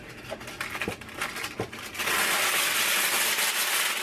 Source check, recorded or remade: recorded